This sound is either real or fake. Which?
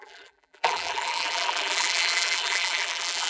fake